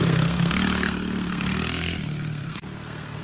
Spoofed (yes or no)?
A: yes